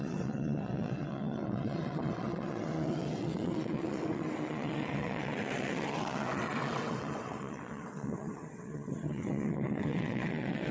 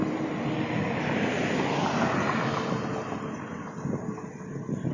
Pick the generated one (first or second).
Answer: first